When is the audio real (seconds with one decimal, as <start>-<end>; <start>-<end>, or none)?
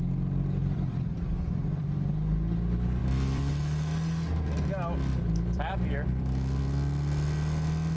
0.0-0.6; 2.1-3.0; 3.5-5.1; 6.6-8.0